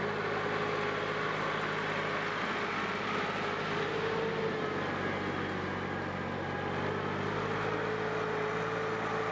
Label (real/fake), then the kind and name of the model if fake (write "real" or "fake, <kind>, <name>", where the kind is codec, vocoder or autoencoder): real